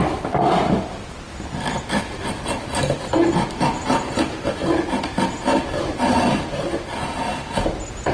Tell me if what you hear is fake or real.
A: real